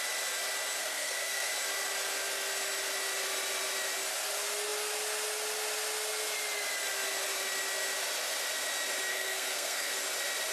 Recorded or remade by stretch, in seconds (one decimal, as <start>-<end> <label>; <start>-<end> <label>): 0.0-0.8 recorded; 0.8-1.5 remade; 1.5-9.1 recorded; 9.1-10.0 remade; 10.0-10.5 recorded